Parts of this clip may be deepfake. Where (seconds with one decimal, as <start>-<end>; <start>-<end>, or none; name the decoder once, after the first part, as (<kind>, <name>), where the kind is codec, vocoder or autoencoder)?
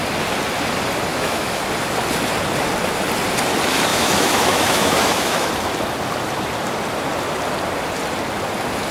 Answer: 1.1-1.6 (autoencoder, DAC-VAE); 3.9-5.5